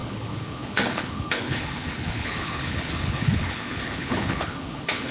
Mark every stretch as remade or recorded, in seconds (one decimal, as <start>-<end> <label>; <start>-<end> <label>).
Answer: 0.0-5.1 remade